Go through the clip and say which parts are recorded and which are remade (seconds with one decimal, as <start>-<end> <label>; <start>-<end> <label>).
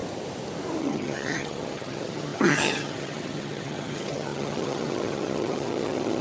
0.0-0.8 recorded; 0.8-6.2 remade